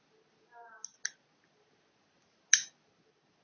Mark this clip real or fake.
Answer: real